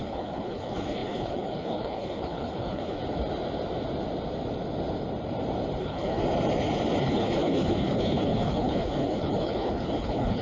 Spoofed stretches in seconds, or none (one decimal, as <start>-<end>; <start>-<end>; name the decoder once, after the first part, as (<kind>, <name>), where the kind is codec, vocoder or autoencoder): 0.0-3.0 (codec, HILCodec); 5.8-6.2; 7.0-10.4